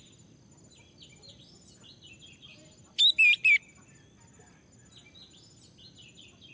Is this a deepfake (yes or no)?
no